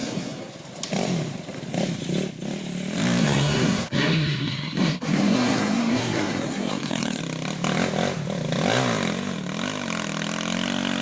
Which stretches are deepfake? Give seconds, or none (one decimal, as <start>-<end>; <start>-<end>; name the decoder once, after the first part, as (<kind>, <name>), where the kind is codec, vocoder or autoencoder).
0.0-0.5 (codec, SNAC); 3.2-7.2